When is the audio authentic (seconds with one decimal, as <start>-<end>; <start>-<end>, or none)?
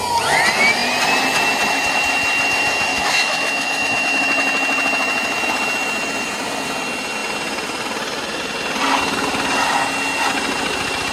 0.0-2.9; 4.2-11.1